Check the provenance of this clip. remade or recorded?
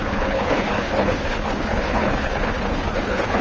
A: remade